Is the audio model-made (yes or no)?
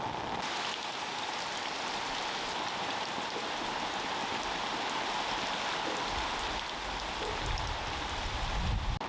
no